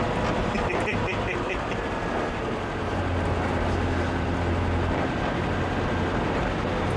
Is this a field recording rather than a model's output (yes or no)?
yes